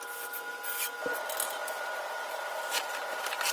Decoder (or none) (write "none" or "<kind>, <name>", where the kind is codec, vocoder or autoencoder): none